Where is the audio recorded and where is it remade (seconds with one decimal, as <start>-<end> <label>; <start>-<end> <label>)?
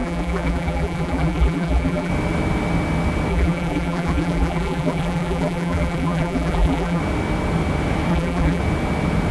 0.0-2.1 remade; 2.1-3.3 recorded; 3.3-7.0 remade; 7.0-8.1 recorded; 8.1-8.6 remade; 8.6-9.3 recorded